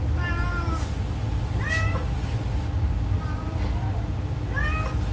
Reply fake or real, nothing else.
real